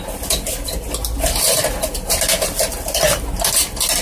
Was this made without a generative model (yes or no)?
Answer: yes